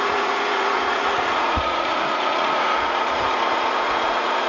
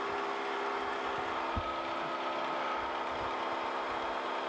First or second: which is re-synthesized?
first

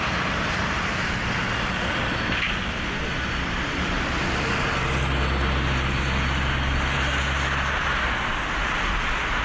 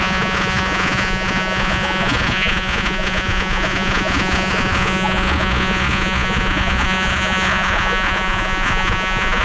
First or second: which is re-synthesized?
second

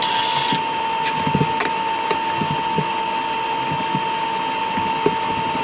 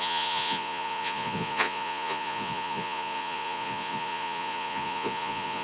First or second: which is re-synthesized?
second